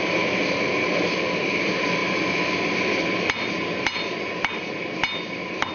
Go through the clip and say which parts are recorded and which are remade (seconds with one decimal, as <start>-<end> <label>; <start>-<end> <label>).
0.0-5.7 recorded